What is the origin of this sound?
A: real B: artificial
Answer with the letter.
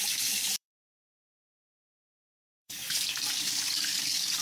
B